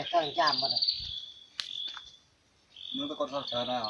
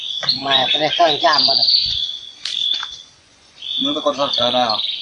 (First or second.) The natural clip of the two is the first